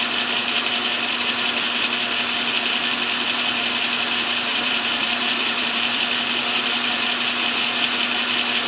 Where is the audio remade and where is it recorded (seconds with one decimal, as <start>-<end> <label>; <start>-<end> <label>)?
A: 0.0-4.5 recorded; 4.5-5.9 remade; 5.9-8.7 recorded